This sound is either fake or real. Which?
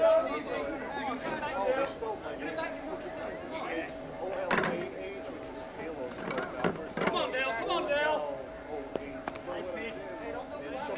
real